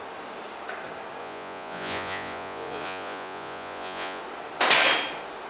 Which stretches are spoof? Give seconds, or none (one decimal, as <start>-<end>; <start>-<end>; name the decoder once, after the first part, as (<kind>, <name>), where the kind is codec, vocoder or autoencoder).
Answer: 1.2-4.2 (vocoder, Vocos)